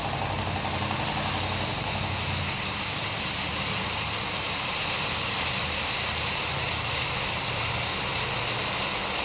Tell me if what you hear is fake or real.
real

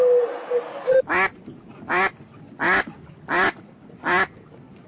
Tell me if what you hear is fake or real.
real